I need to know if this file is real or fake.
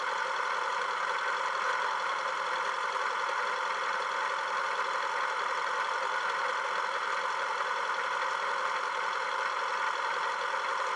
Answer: real